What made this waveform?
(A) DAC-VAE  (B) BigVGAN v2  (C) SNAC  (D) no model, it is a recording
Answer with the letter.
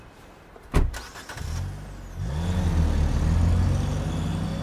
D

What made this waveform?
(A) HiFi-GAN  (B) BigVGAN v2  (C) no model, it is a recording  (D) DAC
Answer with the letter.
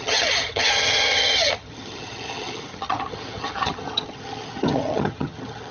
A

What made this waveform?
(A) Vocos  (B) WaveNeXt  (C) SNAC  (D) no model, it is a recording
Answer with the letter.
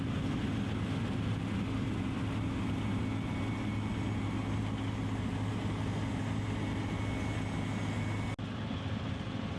D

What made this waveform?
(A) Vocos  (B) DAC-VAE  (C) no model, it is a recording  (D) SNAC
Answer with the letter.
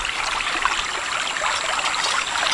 C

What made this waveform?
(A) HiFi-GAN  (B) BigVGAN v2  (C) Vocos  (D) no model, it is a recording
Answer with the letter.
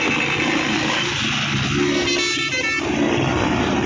D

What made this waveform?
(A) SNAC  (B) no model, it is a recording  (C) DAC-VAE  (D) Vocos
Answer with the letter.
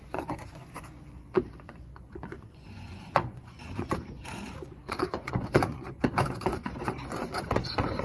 D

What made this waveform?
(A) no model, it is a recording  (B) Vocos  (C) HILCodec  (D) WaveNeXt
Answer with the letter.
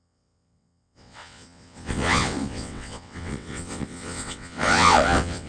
D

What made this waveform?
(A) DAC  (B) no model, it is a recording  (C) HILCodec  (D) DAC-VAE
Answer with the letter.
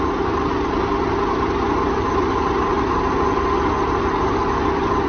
B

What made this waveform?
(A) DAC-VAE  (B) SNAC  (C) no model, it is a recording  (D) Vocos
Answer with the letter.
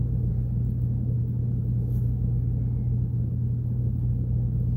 C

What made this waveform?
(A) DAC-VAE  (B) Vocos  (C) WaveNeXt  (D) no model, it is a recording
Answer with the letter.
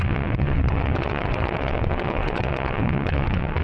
C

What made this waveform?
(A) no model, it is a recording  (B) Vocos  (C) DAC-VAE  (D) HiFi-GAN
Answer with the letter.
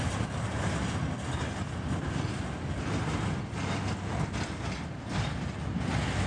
A